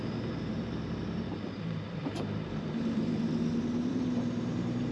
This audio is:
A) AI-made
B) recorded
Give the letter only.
A